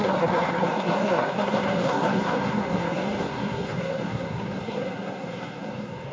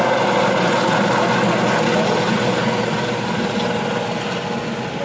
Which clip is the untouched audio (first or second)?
second